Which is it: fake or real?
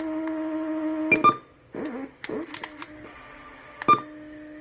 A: real